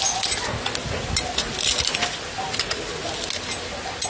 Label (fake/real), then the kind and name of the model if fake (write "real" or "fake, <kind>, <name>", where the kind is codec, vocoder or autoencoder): real